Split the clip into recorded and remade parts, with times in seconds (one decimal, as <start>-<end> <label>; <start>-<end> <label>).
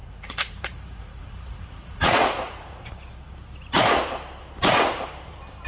0.0-2.9 remade; 2.9-5.7 recorded